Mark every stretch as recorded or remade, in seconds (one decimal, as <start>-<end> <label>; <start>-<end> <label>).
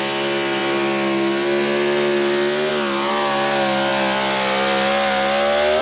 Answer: 0.0-5.8 recorded